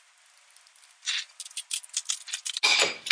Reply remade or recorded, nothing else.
recorded